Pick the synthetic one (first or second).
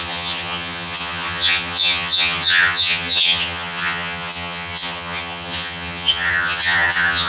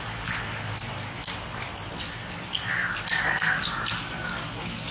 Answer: first